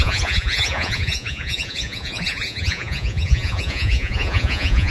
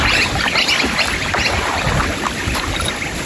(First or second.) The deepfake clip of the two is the first